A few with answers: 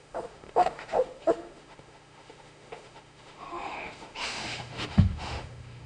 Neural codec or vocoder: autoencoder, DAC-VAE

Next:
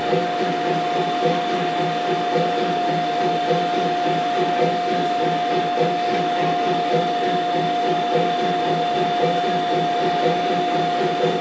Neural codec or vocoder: none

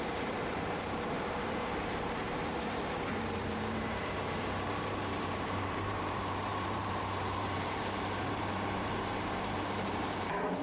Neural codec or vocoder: vocoder, BigVGAN v2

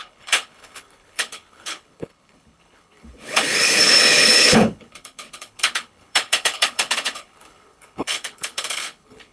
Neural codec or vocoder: codec, HILCodec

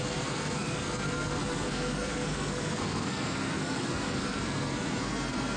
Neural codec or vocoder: codec, SNAC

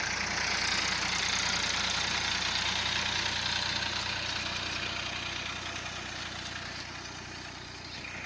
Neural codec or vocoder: none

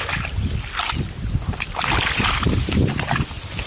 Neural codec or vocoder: none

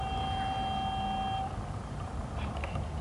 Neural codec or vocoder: none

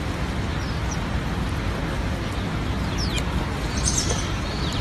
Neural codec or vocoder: none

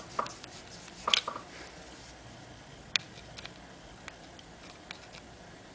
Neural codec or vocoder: none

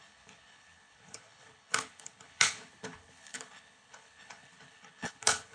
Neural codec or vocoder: codec, HILCodec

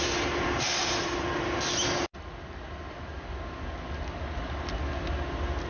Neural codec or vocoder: none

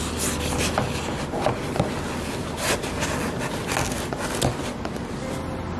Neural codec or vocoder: none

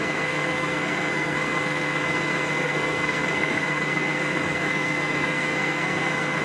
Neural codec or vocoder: codec, SNAC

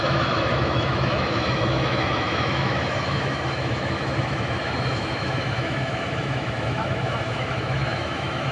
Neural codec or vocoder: autoencoder, DAC-VAE